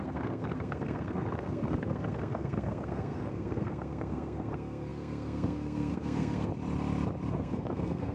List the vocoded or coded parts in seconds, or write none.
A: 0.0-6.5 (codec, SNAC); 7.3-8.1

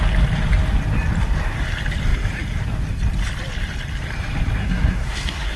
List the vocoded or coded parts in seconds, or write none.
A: 4.6-5.6 (codec, SNAC)